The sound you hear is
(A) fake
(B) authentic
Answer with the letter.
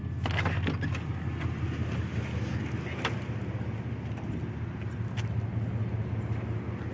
B